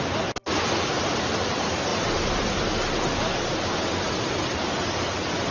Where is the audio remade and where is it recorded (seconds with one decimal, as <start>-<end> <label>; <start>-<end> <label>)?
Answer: 0.0-5.5 recorded